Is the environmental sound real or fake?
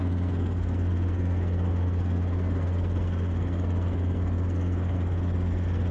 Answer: fake